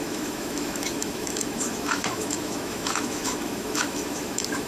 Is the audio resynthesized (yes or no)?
yes